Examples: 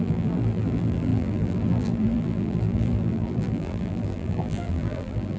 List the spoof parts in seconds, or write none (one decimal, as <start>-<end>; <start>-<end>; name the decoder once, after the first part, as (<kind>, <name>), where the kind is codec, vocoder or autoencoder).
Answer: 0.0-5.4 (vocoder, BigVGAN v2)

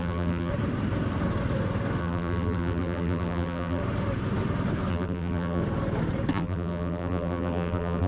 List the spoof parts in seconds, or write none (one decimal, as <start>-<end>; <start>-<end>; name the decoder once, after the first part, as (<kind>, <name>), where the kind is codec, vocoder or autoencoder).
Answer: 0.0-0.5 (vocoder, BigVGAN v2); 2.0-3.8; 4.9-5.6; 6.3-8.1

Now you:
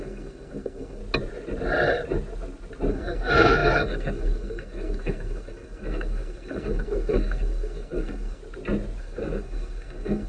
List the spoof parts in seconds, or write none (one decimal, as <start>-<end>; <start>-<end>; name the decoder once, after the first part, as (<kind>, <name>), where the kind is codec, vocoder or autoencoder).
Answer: 0.0-1.0 (codec, SNAC); 2.9-8.4; 9.0-10.3